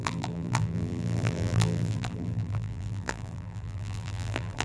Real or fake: fake